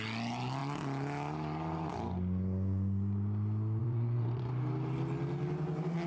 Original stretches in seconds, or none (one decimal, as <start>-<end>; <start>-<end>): 0.0-3.8; 4.5-6.1